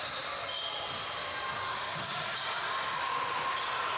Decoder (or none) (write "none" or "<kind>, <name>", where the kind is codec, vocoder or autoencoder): none